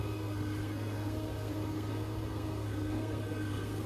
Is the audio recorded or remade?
remade